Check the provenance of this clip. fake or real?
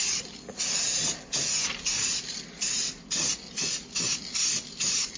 real